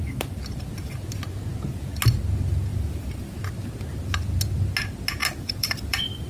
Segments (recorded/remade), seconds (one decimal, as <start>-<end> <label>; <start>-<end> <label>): 0.0-2.7 recorded; 2.7-3.3 remade; 3.3-5.2 recorded; 5.2-6.3 remade